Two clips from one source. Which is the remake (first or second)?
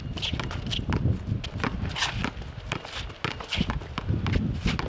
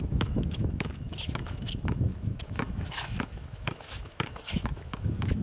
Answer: second